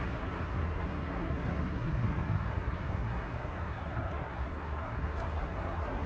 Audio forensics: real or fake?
fake